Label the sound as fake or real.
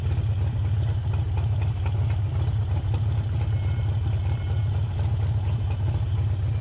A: real